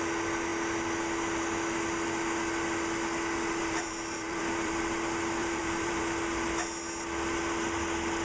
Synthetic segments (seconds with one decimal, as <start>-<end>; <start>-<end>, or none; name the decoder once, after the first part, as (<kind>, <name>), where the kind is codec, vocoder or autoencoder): 3.6-4.8 (vocoder, BigVGAN v2); 5.4-6.0